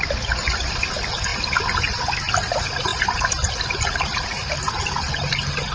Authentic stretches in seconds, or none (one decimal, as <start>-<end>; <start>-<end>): 0.0-5.7